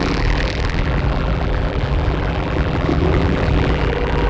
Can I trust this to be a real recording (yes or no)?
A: no